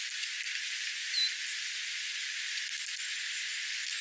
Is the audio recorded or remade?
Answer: recorded